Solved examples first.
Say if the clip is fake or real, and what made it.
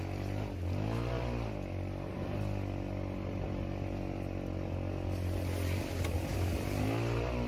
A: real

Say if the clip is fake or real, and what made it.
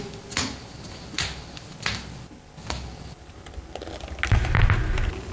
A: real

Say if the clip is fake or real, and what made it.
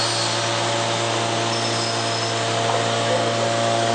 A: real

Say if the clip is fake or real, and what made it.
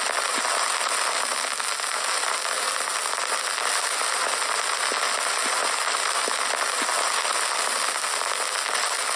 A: real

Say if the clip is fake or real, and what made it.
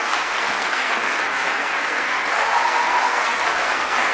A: fake, codec, SNAC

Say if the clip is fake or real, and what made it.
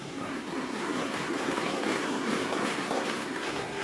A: fake, codec, SNAC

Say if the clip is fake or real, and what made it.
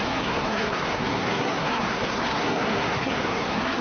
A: fake, codec, SNAC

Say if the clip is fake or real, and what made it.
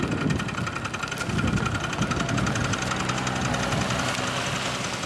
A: real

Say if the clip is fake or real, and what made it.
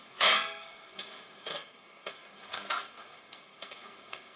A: fake, codec, SNAC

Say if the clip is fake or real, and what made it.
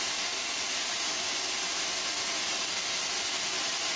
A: real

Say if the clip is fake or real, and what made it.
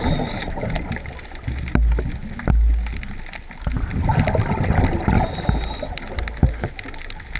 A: real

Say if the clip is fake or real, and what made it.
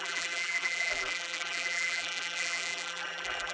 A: fake, vocoder, BigVGAN v2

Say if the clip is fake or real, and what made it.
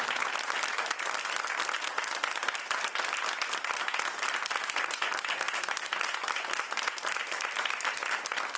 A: real